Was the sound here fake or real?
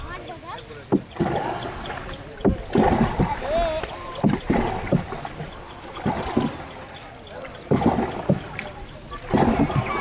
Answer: real